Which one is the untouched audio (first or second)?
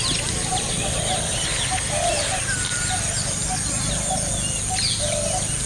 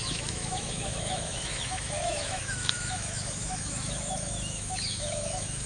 first